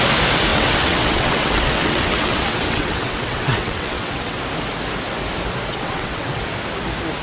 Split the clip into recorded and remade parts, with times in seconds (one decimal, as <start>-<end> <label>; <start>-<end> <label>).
0.0-0.5 recorded; 0.5-4.4 remade; 4.4-5.7 recorded; 5.7-6.4 remade; 6.4-7.2 recorded